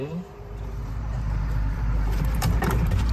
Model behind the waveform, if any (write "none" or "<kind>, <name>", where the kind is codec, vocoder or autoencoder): vocoder, BigVGAN v2